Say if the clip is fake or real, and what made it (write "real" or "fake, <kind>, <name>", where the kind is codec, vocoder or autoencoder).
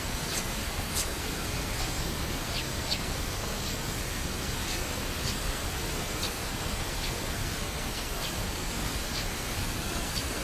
fake, codec, SNAC